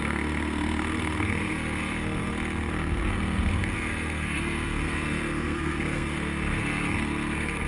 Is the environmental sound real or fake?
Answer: fake